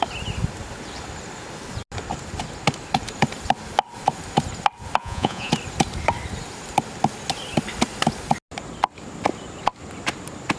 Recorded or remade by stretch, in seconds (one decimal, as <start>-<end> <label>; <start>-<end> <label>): 0.0-5.0 recorded; 5.0-5.5 remade; 5.5-10.6 recorded